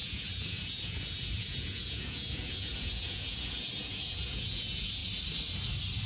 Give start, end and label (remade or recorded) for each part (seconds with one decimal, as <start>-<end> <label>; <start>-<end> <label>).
0.0-5.0 remade; 5.0-6.1 recorded